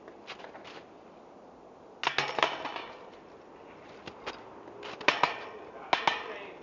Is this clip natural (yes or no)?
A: yes